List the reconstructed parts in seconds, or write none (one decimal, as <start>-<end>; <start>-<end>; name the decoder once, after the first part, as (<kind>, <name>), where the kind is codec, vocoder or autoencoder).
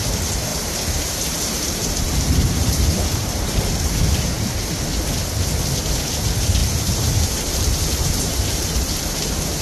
0.5-4.3 (vocoder, BigVGAN v2); 6.6-9.6